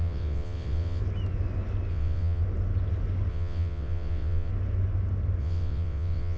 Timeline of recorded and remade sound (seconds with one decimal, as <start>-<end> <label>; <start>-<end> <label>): 0.0-1.0 remade; 1.0-1.9 recorded; 1.9-2.4 remade; 2.4-3.3 recorded; 3.3-4.5 remade; 4.5-5.4 recorded; 5.4-6.4 remade